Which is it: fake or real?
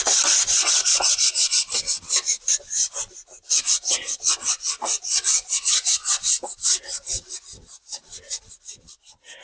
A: real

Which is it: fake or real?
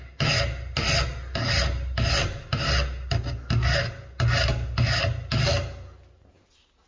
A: real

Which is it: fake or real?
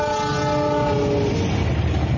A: real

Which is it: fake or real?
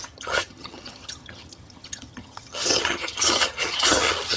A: fake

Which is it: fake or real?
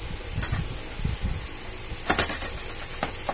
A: real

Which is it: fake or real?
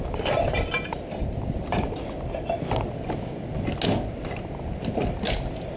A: real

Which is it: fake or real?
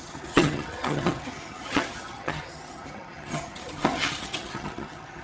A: fake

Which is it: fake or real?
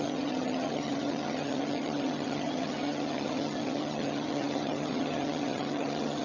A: fake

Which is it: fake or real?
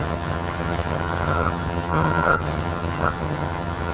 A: fake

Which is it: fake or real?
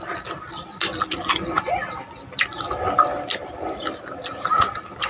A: real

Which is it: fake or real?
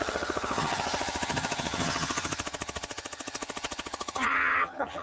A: fake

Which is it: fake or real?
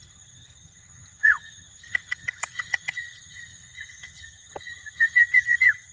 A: fake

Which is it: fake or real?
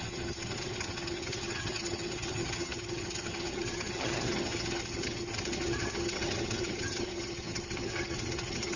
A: fake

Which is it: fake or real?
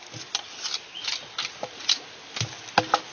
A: real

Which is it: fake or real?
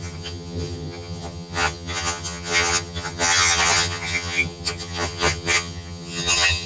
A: fake